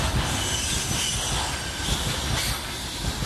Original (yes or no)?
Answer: yes